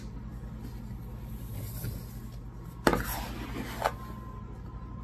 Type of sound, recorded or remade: recorded